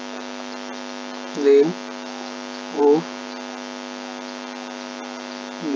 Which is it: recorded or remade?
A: recorded